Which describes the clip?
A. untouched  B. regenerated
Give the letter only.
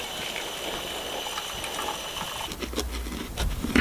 A